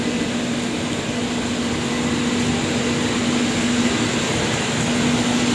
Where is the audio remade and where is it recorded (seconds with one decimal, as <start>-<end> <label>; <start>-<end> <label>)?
0.0-5.5 recorded